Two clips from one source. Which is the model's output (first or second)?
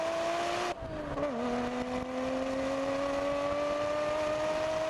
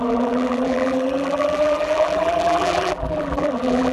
second